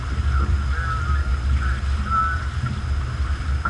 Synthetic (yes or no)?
no